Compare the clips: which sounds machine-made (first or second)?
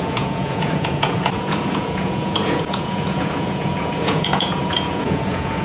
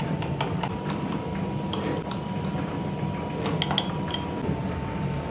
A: first